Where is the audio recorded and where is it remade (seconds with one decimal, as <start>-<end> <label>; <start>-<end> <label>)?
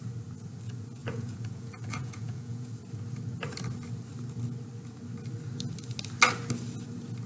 0.0-1.0 recorded; 1.0-2.7 remade; 2.7-7.3 recorded